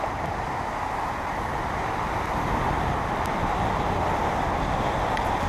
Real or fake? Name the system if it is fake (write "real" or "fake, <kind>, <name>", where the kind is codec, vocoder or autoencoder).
real